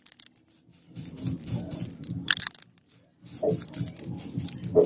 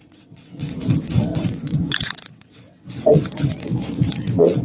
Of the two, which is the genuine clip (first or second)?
first